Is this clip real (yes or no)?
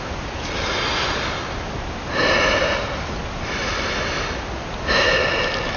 yes